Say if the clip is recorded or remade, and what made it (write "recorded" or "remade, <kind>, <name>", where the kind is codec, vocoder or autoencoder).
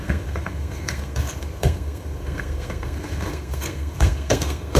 remade, codec, SNAC